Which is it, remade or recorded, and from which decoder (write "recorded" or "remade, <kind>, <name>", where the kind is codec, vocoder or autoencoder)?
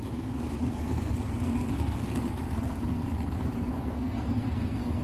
remade, codec, SNAC